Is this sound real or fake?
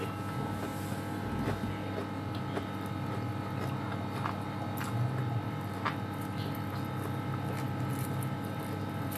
real